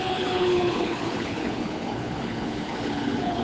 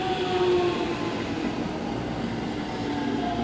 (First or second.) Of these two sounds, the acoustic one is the second